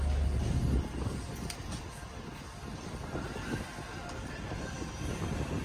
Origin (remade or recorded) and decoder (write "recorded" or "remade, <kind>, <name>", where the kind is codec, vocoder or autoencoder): recorded